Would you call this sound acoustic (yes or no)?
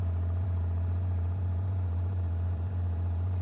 no